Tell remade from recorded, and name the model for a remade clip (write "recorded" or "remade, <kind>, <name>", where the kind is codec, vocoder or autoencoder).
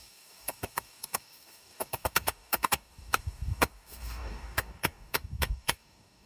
remade, codec, DAC